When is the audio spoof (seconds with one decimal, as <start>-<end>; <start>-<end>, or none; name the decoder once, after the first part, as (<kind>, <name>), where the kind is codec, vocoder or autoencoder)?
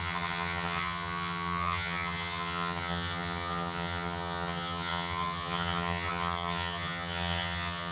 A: 0.0-7.9 (vocoder, HiFi-GAN)